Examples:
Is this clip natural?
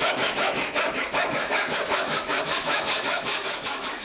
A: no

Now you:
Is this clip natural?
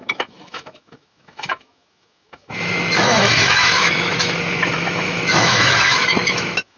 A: no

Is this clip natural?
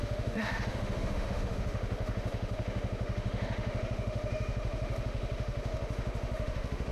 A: no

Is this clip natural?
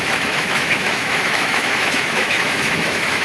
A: no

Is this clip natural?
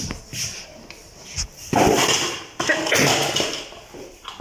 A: yes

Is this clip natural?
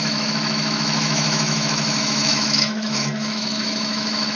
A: no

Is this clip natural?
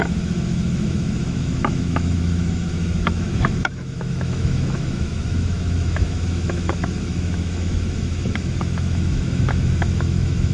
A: no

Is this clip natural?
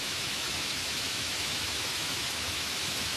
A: no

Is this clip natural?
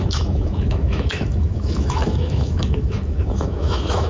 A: no